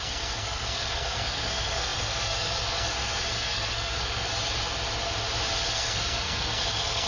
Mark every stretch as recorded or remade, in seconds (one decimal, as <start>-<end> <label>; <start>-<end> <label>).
0.0-4.3 remade; 4.3-5.7 recorded; 5.7-7.1 remade

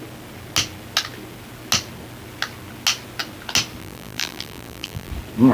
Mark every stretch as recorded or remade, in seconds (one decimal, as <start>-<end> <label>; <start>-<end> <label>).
0.0-3.8 recorded; 3.8-5.1 remade; 5.1-5.5 recorded

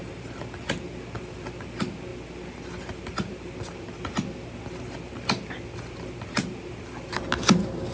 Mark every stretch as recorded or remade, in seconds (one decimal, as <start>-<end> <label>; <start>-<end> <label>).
0.0-7.9 recorded

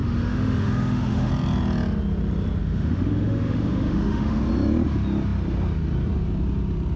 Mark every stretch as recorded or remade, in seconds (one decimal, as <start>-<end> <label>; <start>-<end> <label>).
0.0-1.3 remade; 1.3-2.6 recorded; 2.6-4.4 remade; 4.4-7.0 recorded

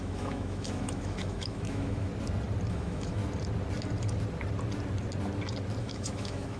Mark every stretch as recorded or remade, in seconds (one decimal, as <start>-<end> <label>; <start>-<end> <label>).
0.0-2.1 remade; 2.1-2.7 recorded; 2.7-3.2 remade; 3.2-5.8 recorded; 5.8-6.6 remade